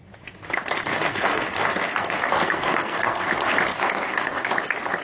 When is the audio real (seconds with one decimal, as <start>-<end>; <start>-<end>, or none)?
0.0-1.0; 3.3-3.7; 4.5-5.0